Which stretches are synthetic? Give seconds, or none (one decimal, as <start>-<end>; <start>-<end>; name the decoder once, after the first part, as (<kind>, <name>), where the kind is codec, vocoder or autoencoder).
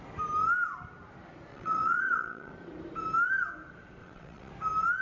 1.5-2.5 (vocoder, WaveNeXt); 4.0-4.5